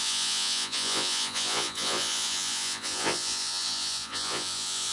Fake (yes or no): yes